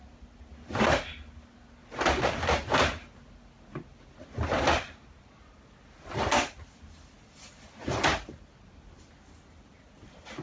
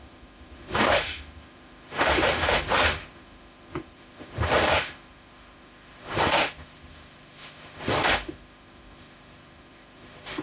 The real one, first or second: first